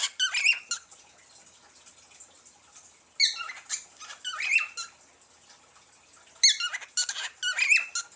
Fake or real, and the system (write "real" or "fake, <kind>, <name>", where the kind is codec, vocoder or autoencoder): real